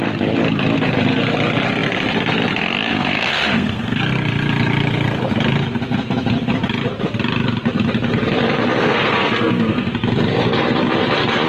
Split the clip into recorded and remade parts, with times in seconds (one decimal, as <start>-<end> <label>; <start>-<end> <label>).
0.0-2.9 recorded; 2.9-4.0 remade; 4.0-8.8 recorded; 8.8-9.9 remade; 9.9-11.5 recorded